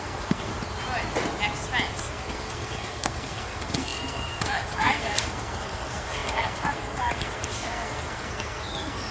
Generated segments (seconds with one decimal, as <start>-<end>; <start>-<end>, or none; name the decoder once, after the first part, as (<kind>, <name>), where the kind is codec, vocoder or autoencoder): 0.0-0.5 (codec, SNAC); 2.0-9.1